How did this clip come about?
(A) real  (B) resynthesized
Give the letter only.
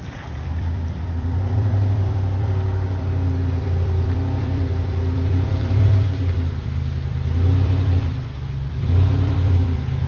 B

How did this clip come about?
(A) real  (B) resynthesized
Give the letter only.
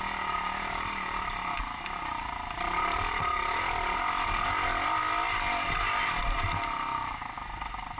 A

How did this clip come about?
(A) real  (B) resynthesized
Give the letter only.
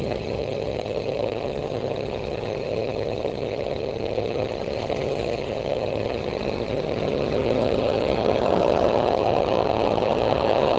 B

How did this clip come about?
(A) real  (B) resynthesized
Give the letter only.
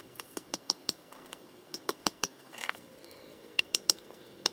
B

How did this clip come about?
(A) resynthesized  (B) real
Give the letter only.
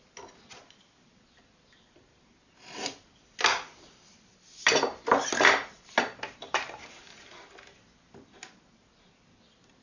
B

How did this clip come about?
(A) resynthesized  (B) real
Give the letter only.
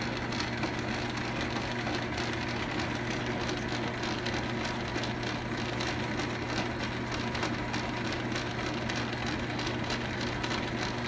B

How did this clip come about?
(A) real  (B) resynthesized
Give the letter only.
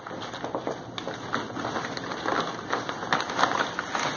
A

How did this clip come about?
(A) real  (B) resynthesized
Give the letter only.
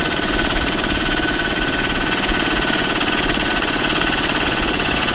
B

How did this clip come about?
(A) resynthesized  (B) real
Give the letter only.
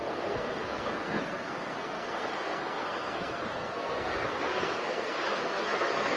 A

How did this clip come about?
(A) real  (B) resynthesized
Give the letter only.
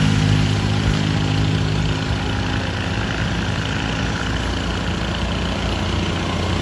A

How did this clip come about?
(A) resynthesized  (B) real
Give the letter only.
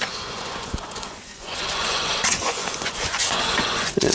A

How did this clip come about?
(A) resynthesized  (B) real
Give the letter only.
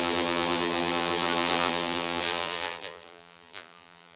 A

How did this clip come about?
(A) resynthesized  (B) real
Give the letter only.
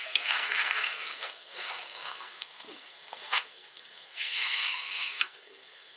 A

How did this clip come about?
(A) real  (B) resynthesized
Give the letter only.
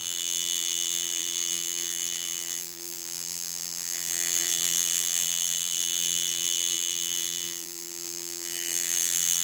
B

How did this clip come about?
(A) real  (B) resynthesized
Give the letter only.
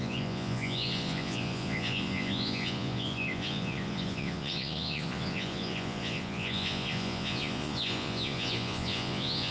B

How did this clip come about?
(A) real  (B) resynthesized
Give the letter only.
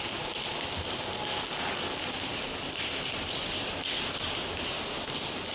A